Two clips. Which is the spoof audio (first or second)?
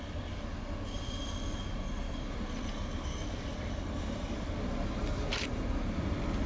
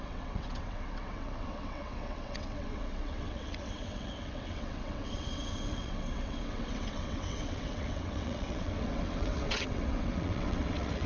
second